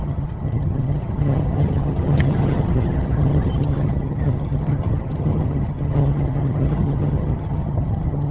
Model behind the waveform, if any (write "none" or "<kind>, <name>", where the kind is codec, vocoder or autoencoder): vocoder, HiFi-GAN